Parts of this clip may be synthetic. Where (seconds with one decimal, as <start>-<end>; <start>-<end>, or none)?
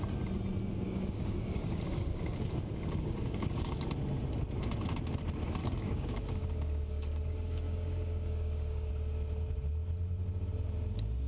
0.7-3.8; 5.6-8.9